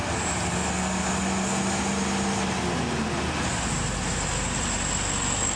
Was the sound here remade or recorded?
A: recorded